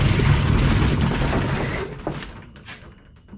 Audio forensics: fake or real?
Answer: real